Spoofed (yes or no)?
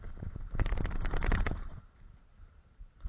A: yes